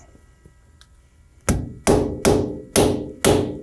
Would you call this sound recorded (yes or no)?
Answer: yes